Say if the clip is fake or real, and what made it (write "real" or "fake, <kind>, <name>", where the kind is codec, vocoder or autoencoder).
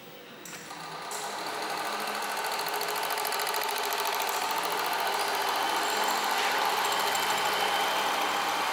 real